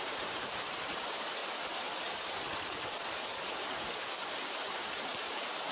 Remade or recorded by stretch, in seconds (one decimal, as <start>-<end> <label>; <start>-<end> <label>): 0.0-1.4 remade; 1.4-4.5 recorded; 4.5-5.7 remade